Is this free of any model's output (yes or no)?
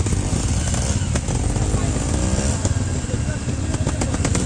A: yes